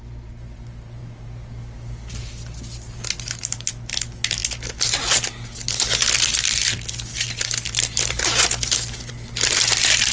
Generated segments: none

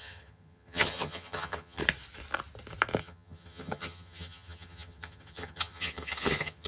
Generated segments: 0.0-1.8 (vocoder, HiFi-GAN); 3.0-6.7

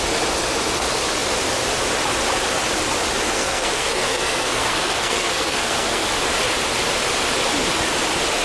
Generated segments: 3.3-6.1 (codec, SNAC)

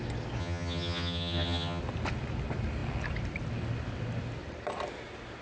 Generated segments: 0.4-1.8 (vocoder, HiFi-GAN)